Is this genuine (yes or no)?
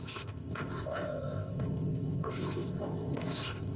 no